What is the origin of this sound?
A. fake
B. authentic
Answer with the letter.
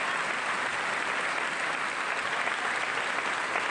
B